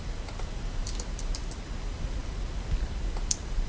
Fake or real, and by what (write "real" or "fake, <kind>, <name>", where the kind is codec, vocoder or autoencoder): real